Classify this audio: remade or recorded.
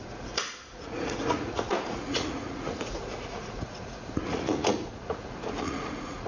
remade